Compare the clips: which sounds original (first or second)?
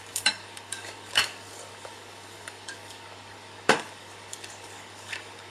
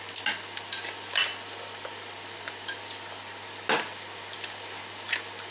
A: second